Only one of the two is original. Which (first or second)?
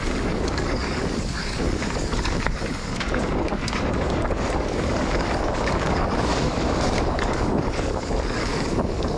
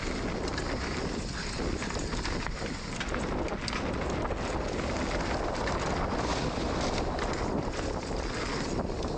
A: second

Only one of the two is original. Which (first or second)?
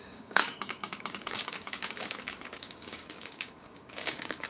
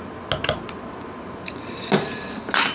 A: second